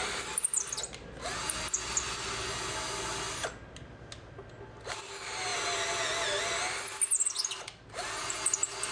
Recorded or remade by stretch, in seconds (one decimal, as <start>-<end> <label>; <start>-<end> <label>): 0.0-8.9 recorded